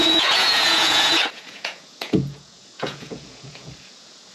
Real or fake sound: fake